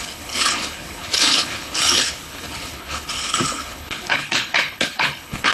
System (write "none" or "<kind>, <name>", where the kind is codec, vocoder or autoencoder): codec, HILCodec